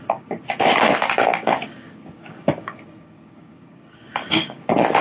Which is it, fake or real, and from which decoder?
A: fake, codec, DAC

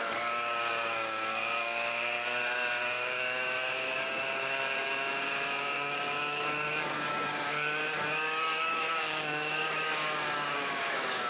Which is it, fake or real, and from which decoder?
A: fake, codec, DAC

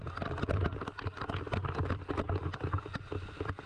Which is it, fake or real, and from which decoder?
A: real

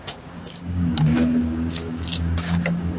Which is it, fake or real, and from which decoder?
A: fake, codec, DAC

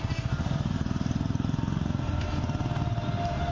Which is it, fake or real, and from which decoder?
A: real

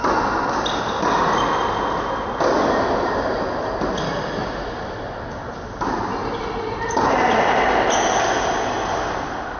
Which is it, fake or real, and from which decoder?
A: real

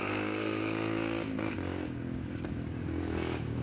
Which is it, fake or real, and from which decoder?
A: fake, codec, DAC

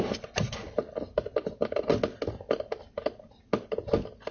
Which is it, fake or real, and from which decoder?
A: real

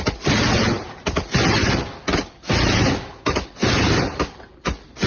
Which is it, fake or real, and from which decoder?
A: real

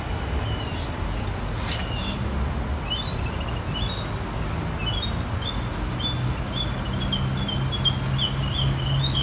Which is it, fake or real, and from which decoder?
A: real